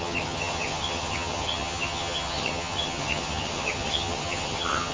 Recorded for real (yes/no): no